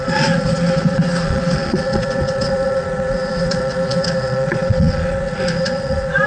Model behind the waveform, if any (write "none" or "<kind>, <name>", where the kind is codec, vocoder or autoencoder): vocoder, Vocos